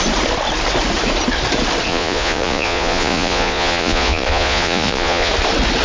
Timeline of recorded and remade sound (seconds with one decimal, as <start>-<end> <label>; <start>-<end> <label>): 0.0-1.9 recorded; 1.9-5.3 remade; 5.3-5.8 recorded